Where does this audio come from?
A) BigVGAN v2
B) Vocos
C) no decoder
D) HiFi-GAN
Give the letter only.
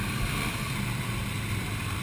A